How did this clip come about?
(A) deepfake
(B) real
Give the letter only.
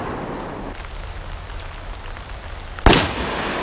B